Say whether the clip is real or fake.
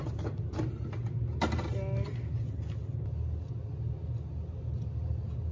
real